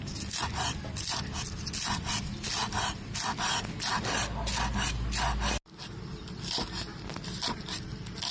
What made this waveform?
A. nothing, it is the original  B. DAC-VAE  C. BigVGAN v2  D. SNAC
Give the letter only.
A